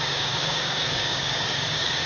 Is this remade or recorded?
remade